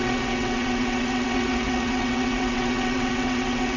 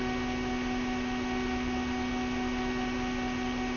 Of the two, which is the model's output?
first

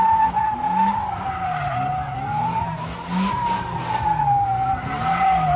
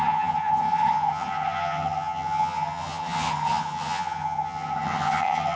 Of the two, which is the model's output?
second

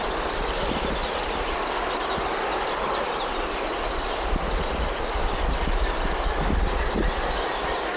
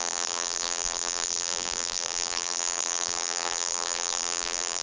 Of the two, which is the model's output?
second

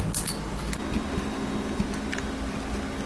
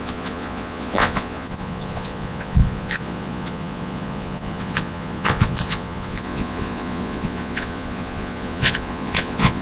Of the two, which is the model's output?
second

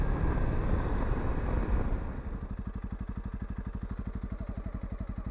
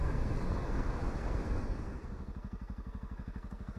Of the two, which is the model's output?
second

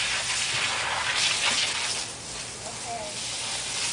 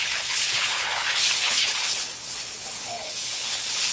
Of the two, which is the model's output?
second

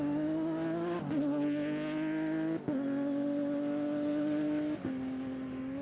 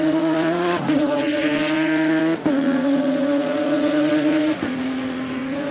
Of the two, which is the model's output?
second